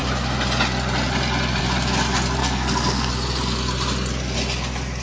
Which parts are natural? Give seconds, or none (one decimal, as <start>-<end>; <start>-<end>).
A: 0.0-2.4; 3.1-5.0